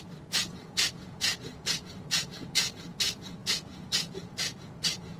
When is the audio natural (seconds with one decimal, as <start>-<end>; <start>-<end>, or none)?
0.0-0.4; 2.8-3.4